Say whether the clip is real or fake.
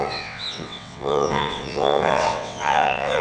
fake